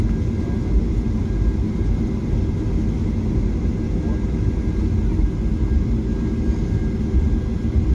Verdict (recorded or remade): recorded